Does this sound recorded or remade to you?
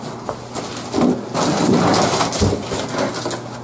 recorded